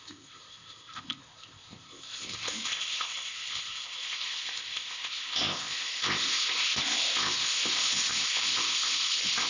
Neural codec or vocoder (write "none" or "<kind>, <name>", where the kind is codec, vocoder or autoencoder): codec, ZipCodec